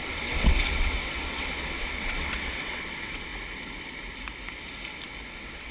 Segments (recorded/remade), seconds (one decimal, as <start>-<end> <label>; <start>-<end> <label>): 0.0-3.3 remade; 3.3-5.3 recorded; 5.3-5.7 remade